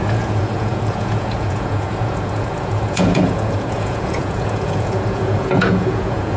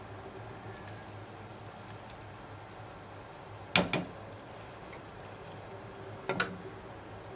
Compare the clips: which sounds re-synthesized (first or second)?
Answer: first